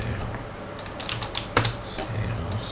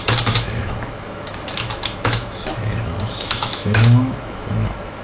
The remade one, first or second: second